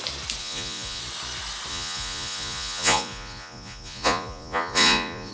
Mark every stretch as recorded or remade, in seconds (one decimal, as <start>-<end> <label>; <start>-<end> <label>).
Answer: 0.0-0.4 recorded; 0.4-1.0 remade; 1.0-1.7 recorded; 1.7-5.3 remade